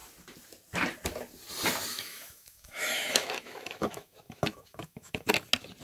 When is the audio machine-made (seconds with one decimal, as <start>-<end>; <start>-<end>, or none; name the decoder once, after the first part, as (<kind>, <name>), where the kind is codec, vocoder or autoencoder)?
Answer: 1.9-5.3 (autoencoder, DAC-VAE)